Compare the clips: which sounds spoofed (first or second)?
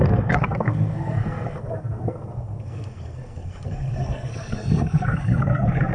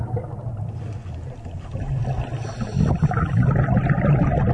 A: first